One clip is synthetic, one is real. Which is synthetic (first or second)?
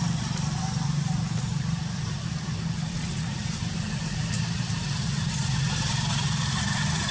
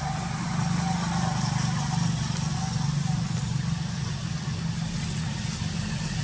first